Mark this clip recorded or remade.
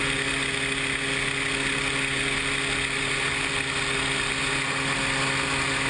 recorded